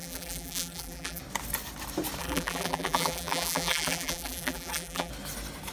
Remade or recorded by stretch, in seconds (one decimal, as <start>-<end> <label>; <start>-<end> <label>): 0.0-1.2 remade; 1.2-2.2 recorded; 2.2-5.1 remade; 5.1-5.7 recorded

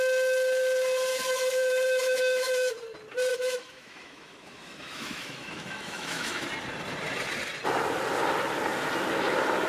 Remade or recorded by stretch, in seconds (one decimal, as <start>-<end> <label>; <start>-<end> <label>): 0.0-1.1 recorded; 1.1-2.7 remade; 2.7-3.3 recorded; 3.3-6.5 remade; 6.5-9.7 recorded

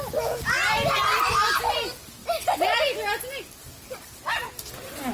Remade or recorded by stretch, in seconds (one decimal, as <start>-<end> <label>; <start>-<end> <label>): 0.0-5.1 recorded

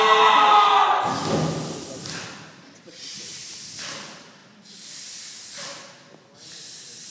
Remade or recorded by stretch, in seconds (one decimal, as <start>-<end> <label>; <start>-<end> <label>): 0.0-7.1 recorded

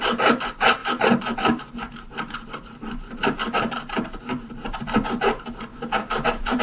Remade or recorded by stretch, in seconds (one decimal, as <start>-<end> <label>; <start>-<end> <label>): 0.0-0.8 recorded; 0.8-4.8 remade; 4.8-5.7 recorded; 5.7-6.6 remade